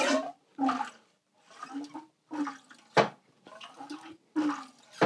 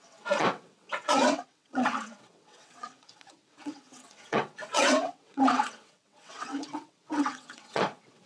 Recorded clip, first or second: first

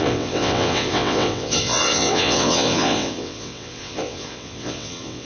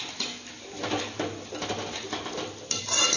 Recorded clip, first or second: second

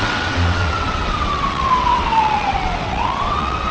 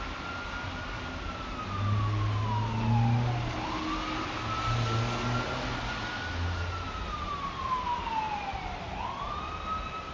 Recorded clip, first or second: second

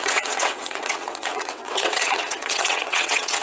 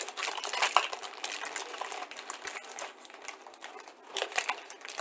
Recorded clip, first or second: second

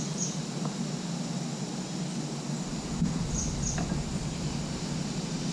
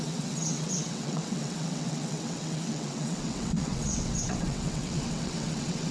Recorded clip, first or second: first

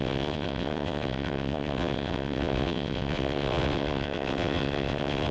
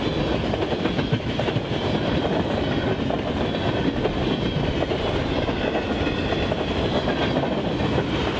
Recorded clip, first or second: second